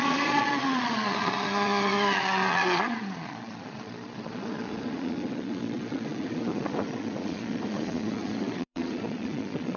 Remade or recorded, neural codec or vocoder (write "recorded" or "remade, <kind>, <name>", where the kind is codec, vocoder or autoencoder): remade, vocoder, Vocos